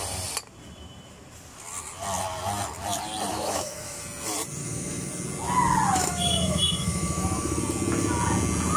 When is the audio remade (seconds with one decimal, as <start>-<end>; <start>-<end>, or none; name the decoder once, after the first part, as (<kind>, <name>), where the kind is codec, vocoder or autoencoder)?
3.3-4.0 (autoencoder, DAC-VAE); 4.6-5.1; 6.0-7.6